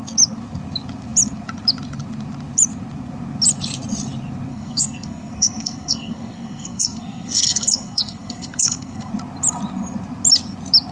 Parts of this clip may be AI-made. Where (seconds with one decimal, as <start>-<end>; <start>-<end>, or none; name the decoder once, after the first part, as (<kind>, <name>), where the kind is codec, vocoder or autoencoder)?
4.5-9.1 (codec, SNAC)